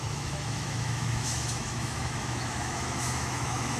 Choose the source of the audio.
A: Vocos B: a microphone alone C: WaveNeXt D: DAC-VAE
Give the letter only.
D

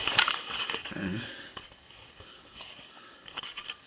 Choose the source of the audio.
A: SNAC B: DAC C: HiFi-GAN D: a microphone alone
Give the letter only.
B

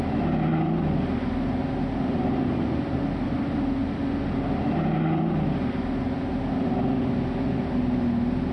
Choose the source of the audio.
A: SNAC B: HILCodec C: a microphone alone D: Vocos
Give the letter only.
C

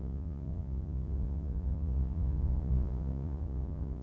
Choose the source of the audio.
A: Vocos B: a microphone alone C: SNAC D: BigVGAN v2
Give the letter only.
A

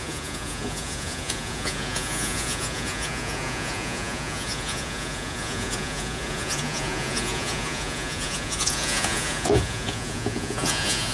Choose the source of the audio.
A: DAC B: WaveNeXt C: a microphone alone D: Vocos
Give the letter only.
D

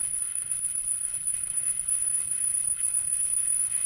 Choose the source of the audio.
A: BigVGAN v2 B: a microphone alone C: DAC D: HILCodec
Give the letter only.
D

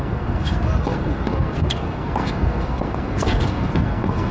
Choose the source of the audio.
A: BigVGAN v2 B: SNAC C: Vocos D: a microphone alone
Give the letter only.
B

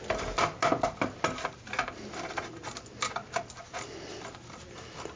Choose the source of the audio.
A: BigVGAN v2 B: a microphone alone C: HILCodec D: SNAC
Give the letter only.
B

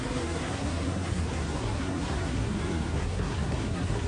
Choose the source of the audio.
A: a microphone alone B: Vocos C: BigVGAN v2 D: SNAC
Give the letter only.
D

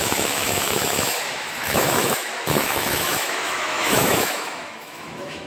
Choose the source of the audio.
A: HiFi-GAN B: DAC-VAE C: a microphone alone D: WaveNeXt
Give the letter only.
B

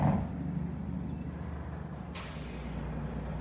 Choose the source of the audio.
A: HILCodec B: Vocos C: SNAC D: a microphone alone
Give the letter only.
D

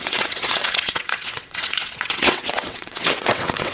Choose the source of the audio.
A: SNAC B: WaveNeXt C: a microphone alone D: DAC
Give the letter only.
B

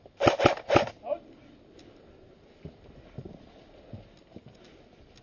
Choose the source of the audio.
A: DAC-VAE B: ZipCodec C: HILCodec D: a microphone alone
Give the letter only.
D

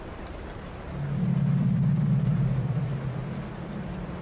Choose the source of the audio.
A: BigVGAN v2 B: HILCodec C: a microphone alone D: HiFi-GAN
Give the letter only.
A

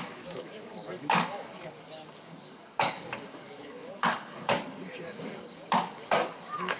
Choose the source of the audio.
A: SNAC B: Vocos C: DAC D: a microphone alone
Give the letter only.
C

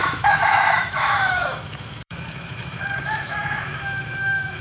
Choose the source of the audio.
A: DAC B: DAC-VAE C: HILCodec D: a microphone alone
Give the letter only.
B